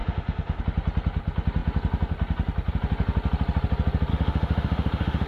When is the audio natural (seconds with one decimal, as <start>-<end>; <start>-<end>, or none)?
0.6-4.1